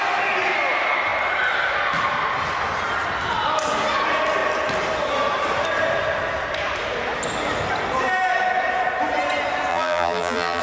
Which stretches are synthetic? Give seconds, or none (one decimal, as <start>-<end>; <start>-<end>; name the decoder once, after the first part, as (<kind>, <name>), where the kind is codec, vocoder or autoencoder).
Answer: 9.7-10.6 (vocoder, BigVGAN v2)